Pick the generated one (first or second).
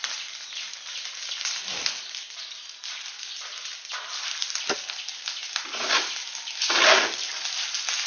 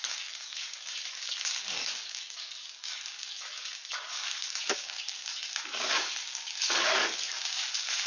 second